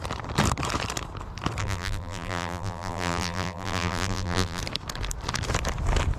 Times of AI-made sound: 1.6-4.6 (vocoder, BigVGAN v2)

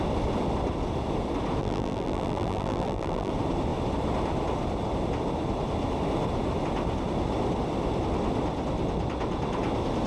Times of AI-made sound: 1.6-3.3 (vocoder, BigVGAN v2)

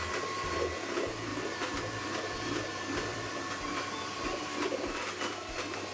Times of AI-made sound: 1.3-1.8 (vocoder, BigVGAN v2); 3.1-5.2

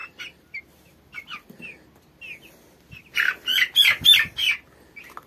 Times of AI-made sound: 0.0-0.6 (vocoder, BigVGAN v2)

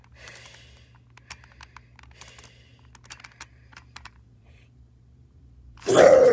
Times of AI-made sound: 3.5-6.3 (vocoder, BigVGAN v2)